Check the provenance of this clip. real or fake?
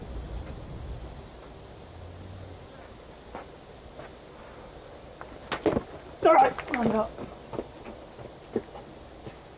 real